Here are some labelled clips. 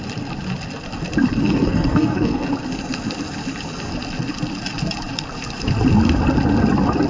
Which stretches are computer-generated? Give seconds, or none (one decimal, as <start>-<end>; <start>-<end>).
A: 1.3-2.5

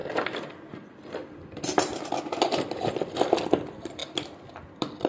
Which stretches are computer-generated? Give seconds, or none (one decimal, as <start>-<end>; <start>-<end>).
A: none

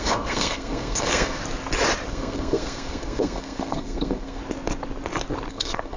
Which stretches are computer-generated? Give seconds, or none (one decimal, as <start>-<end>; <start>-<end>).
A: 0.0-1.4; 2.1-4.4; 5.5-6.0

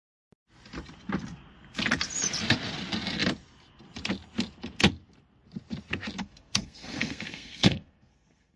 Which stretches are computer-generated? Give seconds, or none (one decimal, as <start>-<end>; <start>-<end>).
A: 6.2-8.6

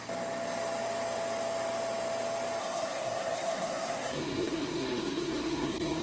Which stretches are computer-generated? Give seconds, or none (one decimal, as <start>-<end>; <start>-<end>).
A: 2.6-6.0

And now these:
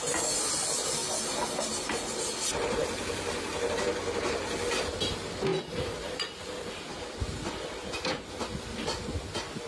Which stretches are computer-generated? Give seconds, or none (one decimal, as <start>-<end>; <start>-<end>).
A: none

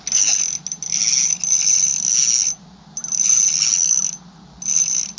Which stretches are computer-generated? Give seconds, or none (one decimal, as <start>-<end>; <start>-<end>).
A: none

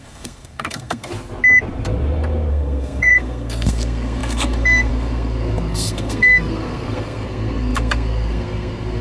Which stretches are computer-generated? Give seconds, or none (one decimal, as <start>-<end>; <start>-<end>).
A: 0.0-1.1; 2.5-9.0